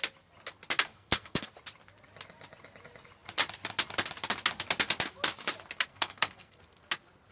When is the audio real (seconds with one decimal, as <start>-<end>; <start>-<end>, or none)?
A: 0.0-0.9; 1.5-5.9; 6.6-7.3